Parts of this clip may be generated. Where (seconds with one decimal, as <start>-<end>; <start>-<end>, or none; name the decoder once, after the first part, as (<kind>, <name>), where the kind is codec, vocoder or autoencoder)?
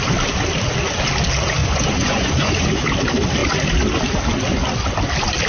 1.6-2.5 (vocoder, Vocos)